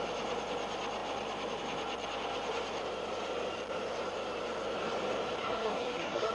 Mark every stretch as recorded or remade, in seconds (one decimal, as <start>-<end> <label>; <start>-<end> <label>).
0.0-5.4 recorded; 5.4-6.3 remade